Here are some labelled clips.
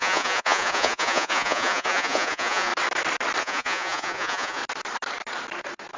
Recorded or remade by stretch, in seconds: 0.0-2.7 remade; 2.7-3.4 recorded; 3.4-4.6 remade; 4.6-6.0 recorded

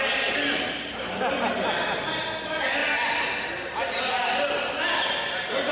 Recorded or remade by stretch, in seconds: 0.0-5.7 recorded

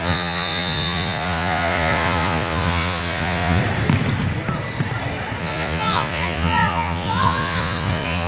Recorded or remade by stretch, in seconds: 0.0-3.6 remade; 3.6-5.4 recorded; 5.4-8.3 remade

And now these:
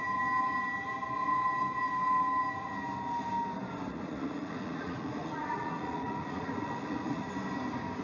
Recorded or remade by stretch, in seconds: 0.0-3.9 recorded; 3.9-7.3 remade; 7.3-8.0 recorded

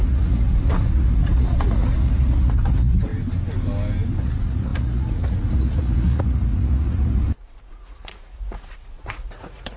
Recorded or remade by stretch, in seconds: 0.0-3.1 remade; 3.1-4.2 recorded; 4.2-9.8 remade